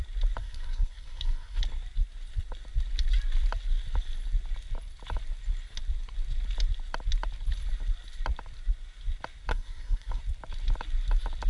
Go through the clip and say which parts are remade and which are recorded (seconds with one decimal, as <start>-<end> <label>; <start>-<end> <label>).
0.0-0.4 recorded; 0.4-1.6 remade; 1.6-9.5 recorded; 9.5-10.2 remade; 10.2-11.5 recorded

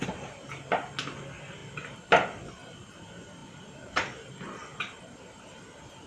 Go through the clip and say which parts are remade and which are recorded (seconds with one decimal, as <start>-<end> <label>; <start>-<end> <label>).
0.0-6.1 recorded

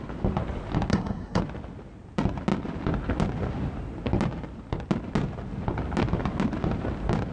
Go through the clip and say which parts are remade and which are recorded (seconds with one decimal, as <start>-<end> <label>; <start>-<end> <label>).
0.0-0.9 recorded; 0.9-1.4 remade; 1.4-7.3 recorded

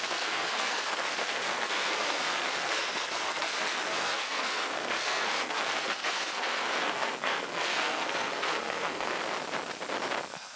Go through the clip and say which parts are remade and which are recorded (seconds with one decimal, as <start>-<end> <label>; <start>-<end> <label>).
0.0-9.2 remade; 9.2-10.2 recorded; 10.2-10.6 remade

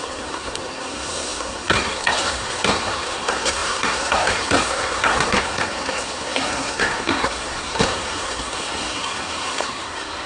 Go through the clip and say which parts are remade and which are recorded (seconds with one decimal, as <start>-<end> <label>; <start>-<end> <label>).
0.0-10.3 remade

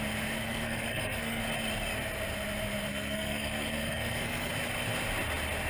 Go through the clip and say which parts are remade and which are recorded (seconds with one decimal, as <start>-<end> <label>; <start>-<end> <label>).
0.0-0.4 recorded; 0.4-1.4 remade; 1.4-2.9 recorded; 2.9-4.5 remade; 4.5-5.7 recorded

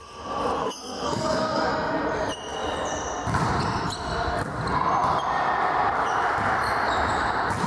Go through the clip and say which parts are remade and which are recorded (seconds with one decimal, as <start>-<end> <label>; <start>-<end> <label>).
0.0-0.6 recorded; 0.6-1.7 remade; 1.7-7.7 recorded